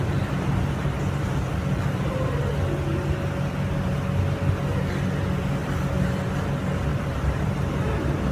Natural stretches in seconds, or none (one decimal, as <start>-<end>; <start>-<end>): 0.0-5.6; 6.2-6.9; 7.5-8.3